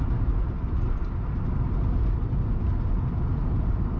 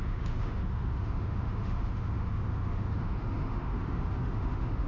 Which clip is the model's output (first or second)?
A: second